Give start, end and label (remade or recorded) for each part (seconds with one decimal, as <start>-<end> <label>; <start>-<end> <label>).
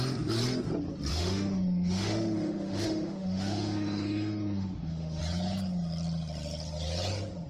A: 0.0-1.1 recorded; 1.1-5.2 remade; 5.2-7.5 recorded